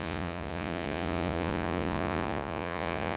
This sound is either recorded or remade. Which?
remade